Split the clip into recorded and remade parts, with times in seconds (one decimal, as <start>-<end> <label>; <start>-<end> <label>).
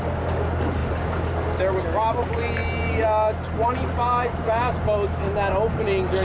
0.0-6.2 recorded